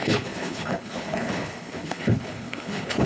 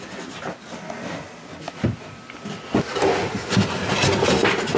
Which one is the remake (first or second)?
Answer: first